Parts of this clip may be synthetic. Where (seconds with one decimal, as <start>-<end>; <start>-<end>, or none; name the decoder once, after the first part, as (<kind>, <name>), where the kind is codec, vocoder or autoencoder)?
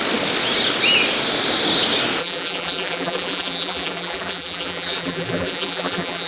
2.2-6.3 (vocoder, BigVGAN v2)